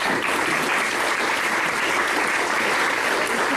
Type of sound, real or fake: real